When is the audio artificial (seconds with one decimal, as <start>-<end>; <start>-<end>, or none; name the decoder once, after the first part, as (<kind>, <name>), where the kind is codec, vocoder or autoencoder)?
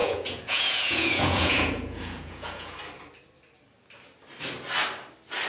0.0-2.8 (vocoder, Vocos)